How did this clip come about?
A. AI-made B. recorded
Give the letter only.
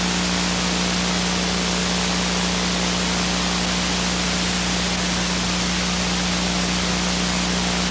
B